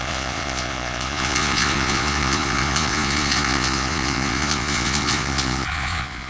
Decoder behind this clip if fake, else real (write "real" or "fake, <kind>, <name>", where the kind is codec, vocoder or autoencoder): fake, vocoder, Vocos